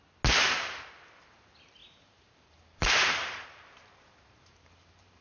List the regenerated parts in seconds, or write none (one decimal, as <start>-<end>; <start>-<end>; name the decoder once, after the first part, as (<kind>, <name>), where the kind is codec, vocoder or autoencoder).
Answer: 1.8-5.2 (vocoder, BigVGAN v2)

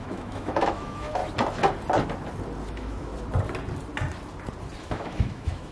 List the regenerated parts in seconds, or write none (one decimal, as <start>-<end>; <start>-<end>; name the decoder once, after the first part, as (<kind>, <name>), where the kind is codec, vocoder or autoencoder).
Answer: 0.0-1.2 (autoencoder, DAC-VAE); 2.7-3.1; 4.8-5.7